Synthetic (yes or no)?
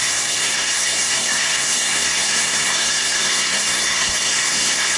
yes